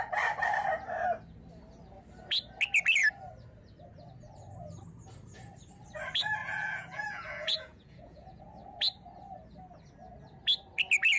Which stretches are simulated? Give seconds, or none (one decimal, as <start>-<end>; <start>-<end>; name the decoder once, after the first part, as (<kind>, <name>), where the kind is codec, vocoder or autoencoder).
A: 6.4-8.4 (vocoder, Vocos)